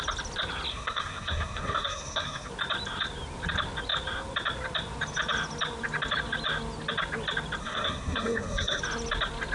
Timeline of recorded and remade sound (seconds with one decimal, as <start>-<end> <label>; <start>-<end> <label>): 0.0-0.7 recorded; 0.7-2.5 remade; 2.5-7.6 recorded; 7.6-8.8 remade; 8.8-9.5 recorded